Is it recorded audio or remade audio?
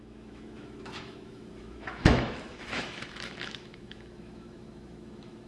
remade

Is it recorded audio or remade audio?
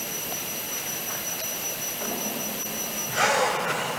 remade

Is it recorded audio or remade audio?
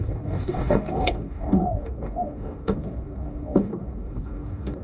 remade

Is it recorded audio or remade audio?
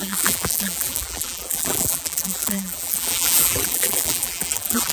remade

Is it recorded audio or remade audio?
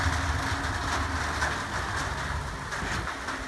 recorded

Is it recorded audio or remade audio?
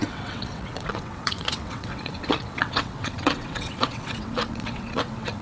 remade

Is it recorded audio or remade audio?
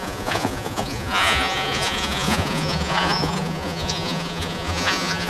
remade